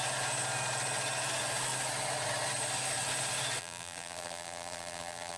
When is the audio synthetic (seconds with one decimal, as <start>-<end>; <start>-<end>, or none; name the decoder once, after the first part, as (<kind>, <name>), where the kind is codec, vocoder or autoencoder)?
3.6-5.4 (vocoder, BigVGAN v2)